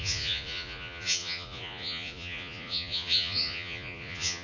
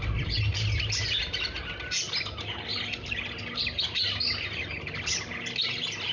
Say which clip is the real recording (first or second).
second